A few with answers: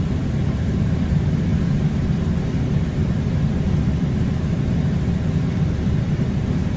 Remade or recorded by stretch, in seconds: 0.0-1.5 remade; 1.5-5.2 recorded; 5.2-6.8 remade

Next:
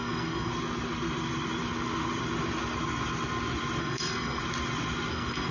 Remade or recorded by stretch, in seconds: 0.0-0.5 remade; 0.5-3.8 recorded; 3.8-4.4 remade; 4.4-5.1 recorded; 5.1-5.5 remade